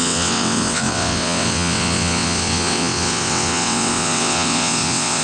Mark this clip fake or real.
fake